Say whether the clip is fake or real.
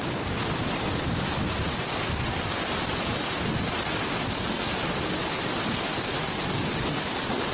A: real